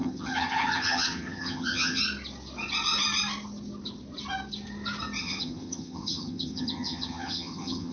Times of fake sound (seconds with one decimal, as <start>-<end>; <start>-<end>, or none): 0.0-2.0; 5.2-7.9